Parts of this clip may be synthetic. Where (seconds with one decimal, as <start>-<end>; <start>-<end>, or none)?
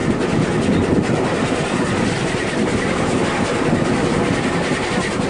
none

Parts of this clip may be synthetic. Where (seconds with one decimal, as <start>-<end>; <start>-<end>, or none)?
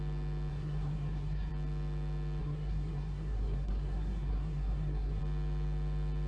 0.5-1.5; 2.4-5.2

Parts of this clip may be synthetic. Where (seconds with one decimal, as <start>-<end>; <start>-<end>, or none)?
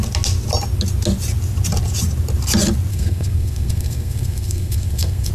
2.9-5.3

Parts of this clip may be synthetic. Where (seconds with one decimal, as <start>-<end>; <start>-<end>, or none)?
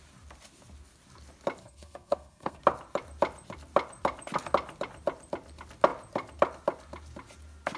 1.6-2.6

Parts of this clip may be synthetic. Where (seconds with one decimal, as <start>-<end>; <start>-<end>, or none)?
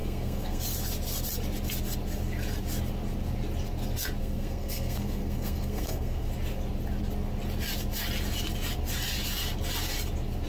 0.0-0.6; 4.2-6.3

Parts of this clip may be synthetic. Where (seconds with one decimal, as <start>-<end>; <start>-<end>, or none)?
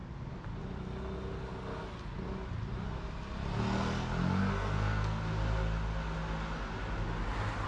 4.4-5.2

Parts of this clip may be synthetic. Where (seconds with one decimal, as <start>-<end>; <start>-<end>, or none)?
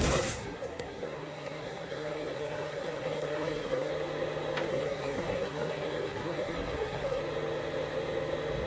0.0-3.9; 4.7-7.2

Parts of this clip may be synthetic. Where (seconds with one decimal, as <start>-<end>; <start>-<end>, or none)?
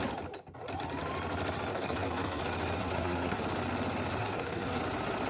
1.7-2.4; 2.8-3.4; 4.2-4.8